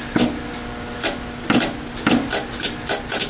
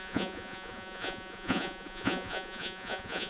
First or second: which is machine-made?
second